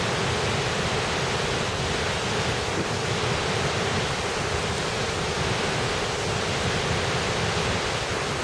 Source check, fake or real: real